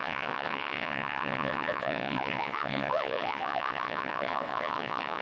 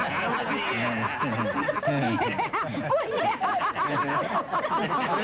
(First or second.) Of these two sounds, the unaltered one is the second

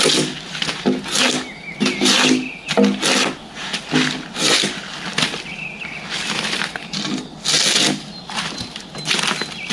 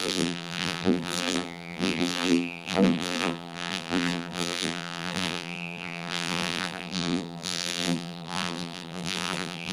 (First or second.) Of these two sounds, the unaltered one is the first